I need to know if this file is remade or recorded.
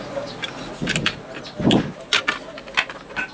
recorded